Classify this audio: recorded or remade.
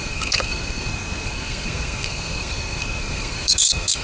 remade